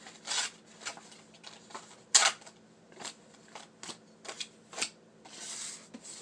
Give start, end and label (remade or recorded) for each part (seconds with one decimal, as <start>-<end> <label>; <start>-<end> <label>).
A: 0.0-6.2 recorded

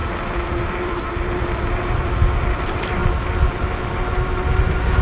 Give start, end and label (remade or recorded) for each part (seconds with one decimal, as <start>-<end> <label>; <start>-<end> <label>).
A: 0.0-5.0 recorded